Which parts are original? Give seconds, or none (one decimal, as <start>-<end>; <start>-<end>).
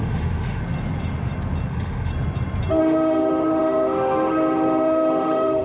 0.6-1.7; 2.1-2.8